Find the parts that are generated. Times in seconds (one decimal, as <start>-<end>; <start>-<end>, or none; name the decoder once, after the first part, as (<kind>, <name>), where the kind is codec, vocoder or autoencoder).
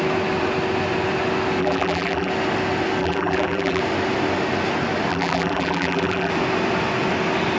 1.6-2.3 (vocoder, BigVGAN v2); 3.0-3.8; 5.1-6.3